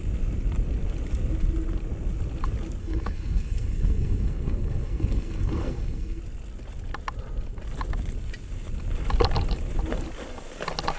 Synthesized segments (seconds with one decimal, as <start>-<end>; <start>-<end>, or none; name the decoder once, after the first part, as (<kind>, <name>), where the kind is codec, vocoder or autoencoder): 2.8-6.2 (codec, SNAC)